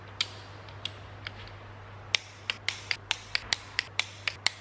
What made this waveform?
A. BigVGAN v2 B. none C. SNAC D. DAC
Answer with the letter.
B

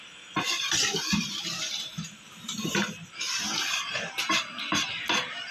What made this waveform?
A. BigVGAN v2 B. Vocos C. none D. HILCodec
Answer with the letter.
A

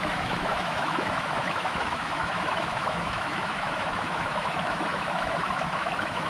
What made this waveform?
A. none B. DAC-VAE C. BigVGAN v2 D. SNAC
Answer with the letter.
B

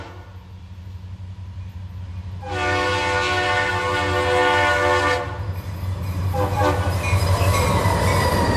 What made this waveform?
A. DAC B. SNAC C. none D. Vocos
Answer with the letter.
C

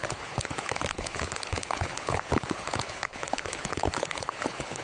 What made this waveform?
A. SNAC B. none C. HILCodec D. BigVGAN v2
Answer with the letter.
C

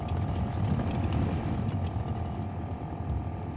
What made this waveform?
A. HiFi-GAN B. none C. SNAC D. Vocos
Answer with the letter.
B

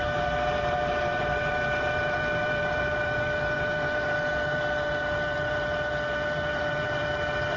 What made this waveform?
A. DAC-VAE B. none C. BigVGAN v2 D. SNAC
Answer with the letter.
C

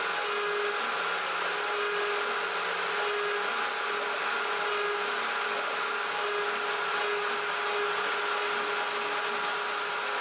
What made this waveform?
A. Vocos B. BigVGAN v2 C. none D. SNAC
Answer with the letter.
C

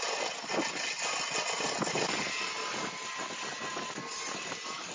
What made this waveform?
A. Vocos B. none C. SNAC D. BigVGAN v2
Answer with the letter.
B